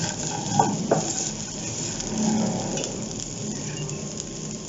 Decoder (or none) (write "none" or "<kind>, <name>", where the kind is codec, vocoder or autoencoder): none